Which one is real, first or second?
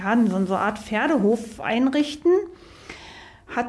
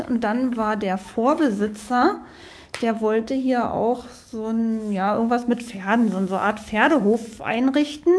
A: first